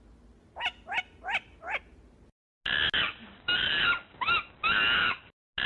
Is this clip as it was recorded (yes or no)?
yes